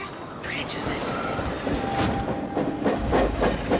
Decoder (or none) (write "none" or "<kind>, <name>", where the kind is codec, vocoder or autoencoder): none